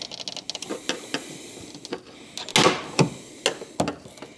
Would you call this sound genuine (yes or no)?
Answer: yes